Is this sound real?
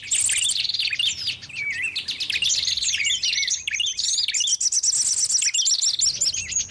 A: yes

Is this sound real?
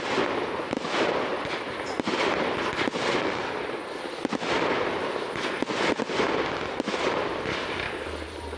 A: yes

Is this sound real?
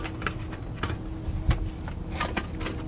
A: yes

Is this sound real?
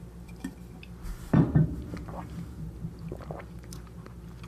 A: no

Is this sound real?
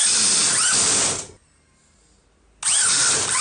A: yes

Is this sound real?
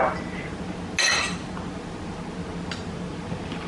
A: yes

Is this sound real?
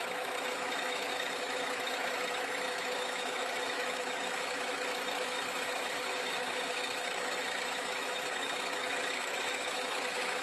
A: no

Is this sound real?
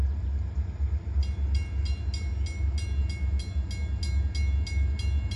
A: yes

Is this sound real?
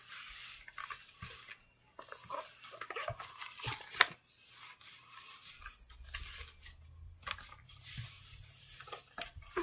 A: yes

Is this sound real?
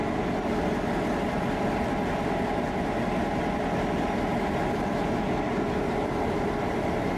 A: yes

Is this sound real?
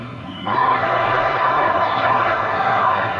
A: no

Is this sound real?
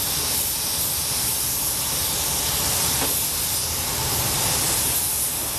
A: yes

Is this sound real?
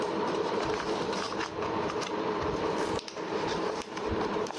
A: no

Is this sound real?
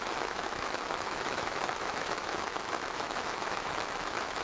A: no